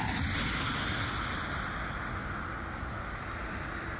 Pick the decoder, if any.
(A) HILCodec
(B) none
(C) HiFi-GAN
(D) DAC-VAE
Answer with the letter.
B